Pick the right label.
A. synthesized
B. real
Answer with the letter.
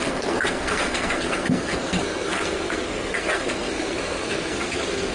A